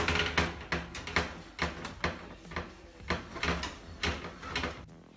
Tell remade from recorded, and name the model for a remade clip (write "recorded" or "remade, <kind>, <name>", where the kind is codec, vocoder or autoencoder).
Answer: recorded